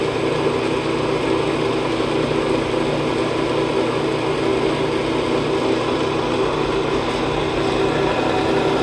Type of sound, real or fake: real